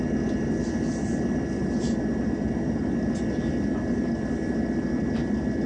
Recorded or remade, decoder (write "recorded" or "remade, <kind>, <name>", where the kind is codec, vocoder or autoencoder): recorded